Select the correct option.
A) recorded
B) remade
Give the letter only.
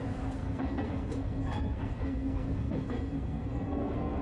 B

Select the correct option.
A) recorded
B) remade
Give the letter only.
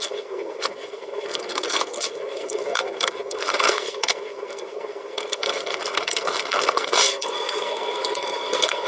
B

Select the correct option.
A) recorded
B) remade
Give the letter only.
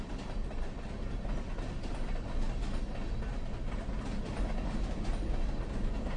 A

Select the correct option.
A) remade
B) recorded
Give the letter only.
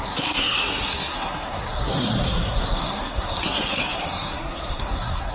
A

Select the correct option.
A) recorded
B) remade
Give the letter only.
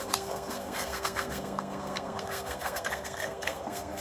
B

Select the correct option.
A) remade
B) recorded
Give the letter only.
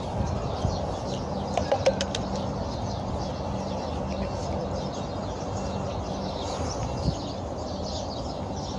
B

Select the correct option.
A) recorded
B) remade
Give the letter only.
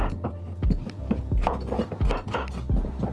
A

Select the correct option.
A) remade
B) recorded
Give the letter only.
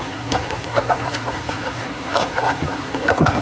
A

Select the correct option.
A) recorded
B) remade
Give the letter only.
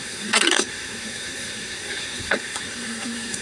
B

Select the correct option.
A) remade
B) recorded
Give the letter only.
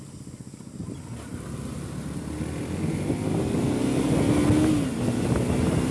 B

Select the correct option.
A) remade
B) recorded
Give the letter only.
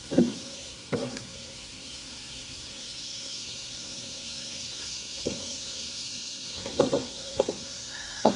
A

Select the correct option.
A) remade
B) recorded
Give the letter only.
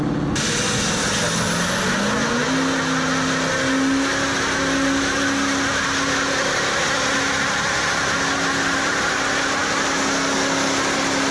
B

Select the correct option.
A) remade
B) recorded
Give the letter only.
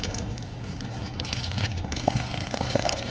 A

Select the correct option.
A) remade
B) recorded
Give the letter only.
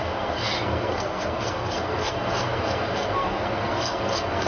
A